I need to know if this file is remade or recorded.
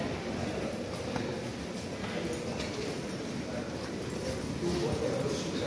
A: recorded